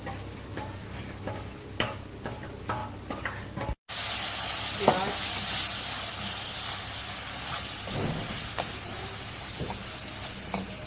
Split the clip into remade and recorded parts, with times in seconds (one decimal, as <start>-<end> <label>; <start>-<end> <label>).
0.0-0.5 recorded; 0.5-1.2 remade; 1.2-10.9 recorded